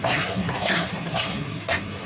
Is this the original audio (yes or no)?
no